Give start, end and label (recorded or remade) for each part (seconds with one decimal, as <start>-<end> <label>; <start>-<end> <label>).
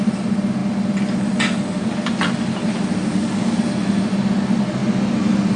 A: 0.0-3.1 recorded; 3.1-3.6 remade; 3.6-5.6 recorded